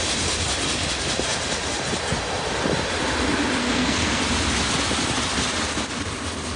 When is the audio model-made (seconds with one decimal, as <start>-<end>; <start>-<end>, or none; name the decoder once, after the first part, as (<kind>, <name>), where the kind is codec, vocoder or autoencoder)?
3.6-4.2 (codec, SNAC)